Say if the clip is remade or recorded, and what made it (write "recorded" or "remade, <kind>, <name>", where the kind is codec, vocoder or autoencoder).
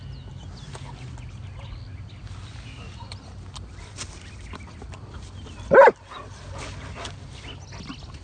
recorded